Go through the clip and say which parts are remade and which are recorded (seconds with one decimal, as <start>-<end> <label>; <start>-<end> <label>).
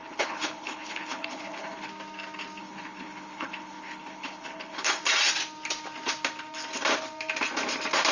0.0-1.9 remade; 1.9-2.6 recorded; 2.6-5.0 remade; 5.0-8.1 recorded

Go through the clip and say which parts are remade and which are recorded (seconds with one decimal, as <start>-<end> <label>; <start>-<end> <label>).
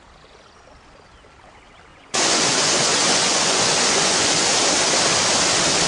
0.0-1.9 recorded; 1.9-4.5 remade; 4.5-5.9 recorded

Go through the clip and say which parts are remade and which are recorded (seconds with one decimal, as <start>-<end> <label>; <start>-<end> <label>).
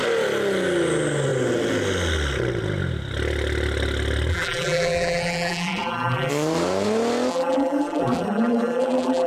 0.0-4.3 recorded; 4.3-6.3 remade; 6.3-7.3 recorded; 7.3-9.3 remade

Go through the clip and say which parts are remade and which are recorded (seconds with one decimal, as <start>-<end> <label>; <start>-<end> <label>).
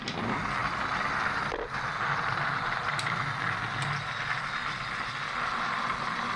0.0-6.4 recorded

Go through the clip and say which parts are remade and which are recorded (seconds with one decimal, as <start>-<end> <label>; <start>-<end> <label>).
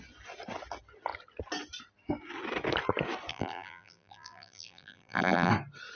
0.0-3.3 recorded; 3.3-5.5 remade; 5.5-6.0 recorded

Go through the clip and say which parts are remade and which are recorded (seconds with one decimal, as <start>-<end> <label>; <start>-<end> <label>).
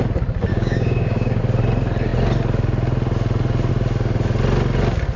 0.0-0.5 recorded; 0.5-1.4 remade; 1.4-5.2 recorded